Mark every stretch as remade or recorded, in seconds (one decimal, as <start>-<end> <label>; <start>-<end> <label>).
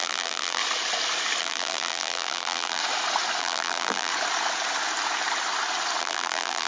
0.0-0.6 remade; 0.6-1.4 recorded; 1.4-2.8 remade; 2.8-3.4 recorded; 3.4-4.1 remade; 4.1-6.0 recorded; 6.0-6.7 remade